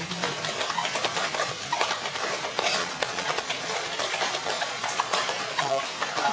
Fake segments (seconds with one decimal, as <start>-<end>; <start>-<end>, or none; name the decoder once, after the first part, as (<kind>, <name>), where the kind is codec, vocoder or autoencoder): 2.8-4.0 (vocoder, Vocos); 4.4-5.8